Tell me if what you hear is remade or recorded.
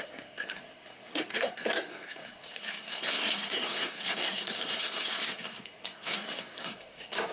remade